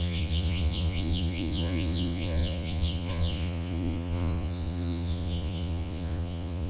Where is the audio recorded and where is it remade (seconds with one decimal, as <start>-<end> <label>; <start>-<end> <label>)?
0.0-6.7 remade